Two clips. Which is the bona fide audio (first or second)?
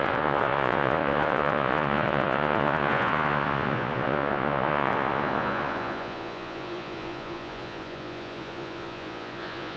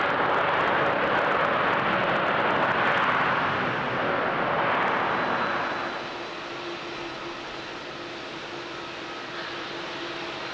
second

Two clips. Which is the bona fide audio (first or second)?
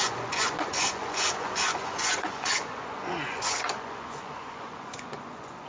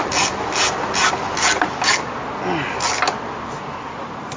second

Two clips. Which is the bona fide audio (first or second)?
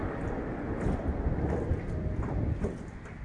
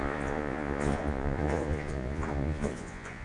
first